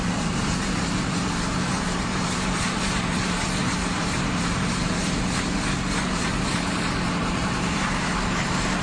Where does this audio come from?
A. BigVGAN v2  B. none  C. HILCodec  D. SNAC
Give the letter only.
A